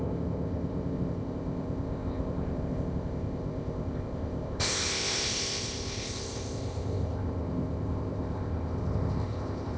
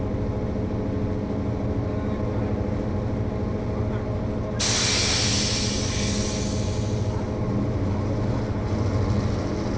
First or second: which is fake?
first